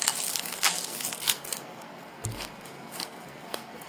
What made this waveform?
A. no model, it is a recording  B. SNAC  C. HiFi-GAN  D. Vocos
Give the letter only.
B